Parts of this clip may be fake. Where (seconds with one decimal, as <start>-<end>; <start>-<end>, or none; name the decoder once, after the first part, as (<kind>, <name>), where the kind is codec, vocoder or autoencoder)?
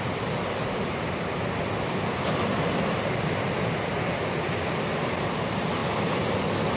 none